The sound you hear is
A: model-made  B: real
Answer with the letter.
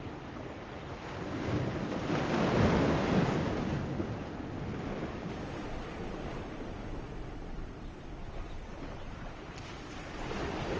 B